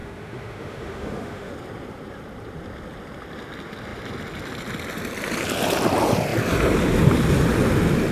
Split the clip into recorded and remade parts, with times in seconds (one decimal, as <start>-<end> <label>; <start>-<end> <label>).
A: 0.0-1.5 remade; 1.5-8.1 recorded

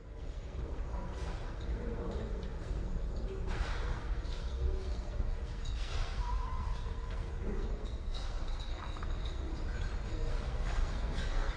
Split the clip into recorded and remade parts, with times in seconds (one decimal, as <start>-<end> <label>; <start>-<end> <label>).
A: 0.0-9.5 remade; 9.5-10.1 recorded; 10.1-11.6 remade